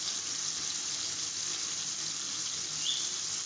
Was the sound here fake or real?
real